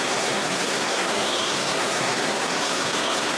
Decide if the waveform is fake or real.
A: fake